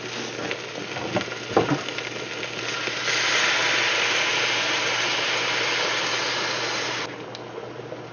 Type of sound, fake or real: real